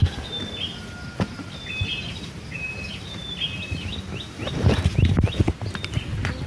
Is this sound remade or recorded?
recorded